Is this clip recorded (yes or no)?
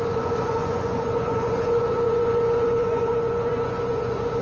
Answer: no